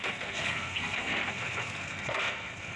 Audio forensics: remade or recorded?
remade